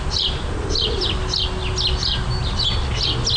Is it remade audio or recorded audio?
recorded